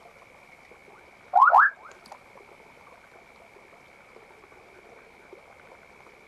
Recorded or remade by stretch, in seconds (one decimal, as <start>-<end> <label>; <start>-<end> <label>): 0.0-6.3 recorded